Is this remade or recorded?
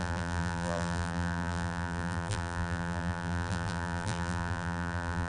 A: remade